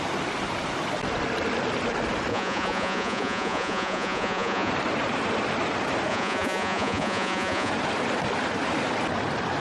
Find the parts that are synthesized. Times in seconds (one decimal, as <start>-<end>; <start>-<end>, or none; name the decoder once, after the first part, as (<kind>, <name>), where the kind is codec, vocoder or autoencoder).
2.3-4.7 (vocoder, Vocos); 6.1-7.7